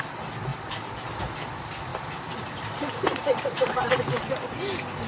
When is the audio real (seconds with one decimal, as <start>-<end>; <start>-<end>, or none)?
0.0-0.5; 1.1-1.9; 3.9-5.1